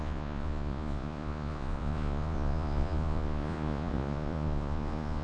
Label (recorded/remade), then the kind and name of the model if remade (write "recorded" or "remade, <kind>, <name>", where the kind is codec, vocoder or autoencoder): remade, vocoder, Vocos